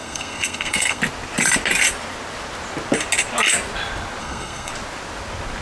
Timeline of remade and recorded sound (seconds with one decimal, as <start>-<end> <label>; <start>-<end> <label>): 0.0-1.0 remade; 1.0-4.2 recorded; 4.2-4.7 remade; 4.7-5.6 recorded